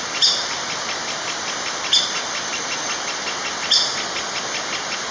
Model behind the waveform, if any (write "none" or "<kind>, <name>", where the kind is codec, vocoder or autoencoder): none